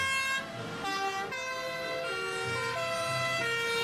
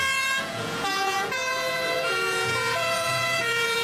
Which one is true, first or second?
first